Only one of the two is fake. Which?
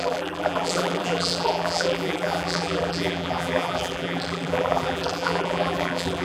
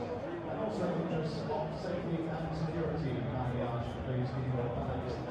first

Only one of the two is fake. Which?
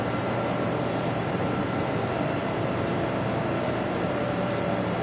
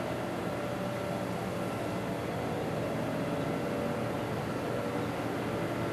first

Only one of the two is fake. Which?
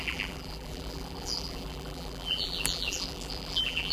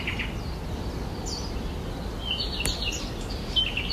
first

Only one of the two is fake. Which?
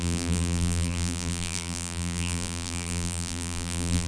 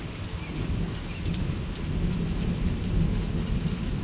first